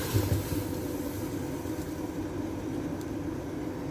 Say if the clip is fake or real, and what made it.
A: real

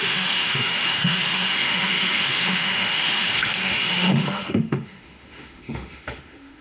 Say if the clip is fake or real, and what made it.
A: fake, autoencoder, DAC-VAE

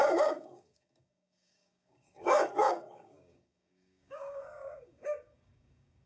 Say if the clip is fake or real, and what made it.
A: fake, codec, DAC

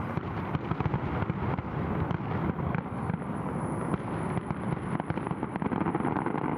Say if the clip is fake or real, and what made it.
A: real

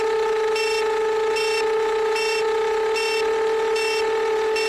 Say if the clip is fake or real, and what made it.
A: real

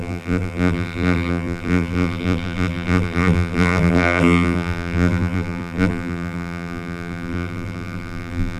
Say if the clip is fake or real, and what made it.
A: fake, vocoder, BigVGAN v2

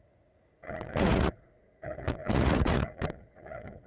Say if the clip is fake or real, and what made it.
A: fake, vocoder, Vocos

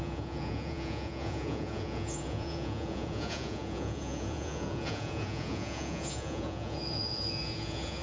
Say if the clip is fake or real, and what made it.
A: fake, vocoder, Vocos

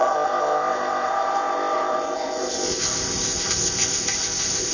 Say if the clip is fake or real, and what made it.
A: fake, codec, ZipCodec